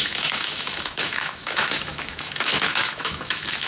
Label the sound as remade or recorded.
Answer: remade